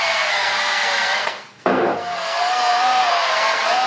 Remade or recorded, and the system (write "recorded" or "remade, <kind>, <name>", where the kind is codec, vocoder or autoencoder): remade, codec, SNAC